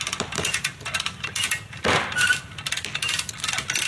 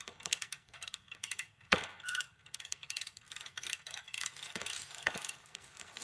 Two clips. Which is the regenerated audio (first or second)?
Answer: second